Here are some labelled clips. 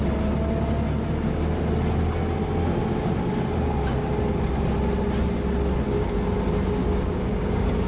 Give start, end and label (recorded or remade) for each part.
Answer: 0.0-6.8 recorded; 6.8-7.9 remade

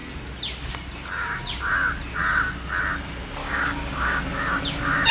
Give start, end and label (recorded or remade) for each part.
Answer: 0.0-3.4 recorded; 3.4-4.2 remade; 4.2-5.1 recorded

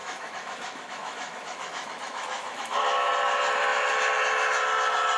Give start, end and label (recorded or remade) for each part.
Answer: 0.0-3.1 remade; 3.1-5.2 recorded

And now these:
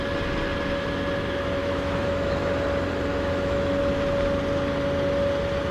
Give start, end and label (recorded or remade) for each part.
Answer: 0.0-1.6 recorded; 1.6-2.5 remade; 2.5-3.1 recorded; 3.1-3.7 remade; 3.7-5.7 recorded

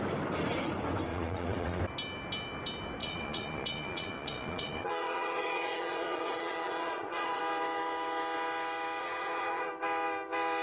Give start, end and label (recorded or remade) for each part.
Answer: 0.0-1.1 recorded; 1.1-1.8 remade; 1.8-3.0 recorded; 3.0-7.4 remade; 7.4-9.0 recorded; 9.0-9.7 remade; 9.7-10.6 recorded